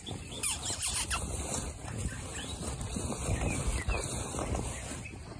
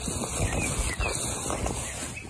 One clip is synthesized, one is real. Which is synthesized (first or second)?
first